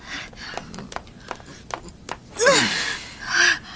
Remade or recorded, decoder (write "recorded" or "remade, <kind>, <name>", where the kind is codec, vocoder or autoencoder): recorded